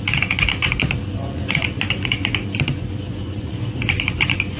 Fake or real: fake